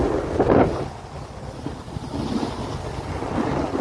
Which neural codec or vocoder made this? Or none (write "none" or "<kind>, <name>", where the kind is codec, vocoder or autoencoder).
none